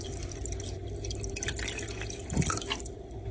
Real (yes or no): yes